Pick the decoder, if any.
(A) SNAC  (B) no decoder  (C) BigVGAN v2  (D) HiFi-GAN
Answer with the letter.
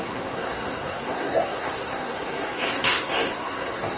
A